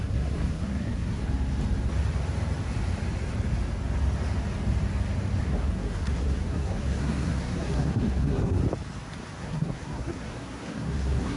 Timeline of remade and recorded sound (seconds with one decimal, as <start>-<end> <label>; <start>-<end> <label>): 0.0-1.2 remade; 1.2-5.4 recorded; 5.4-8.6 remade; 8.6-9.4 recorded; 9.4-11.4 remade